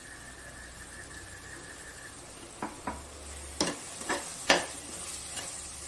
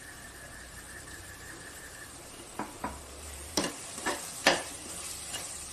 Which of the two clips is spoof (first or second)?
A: second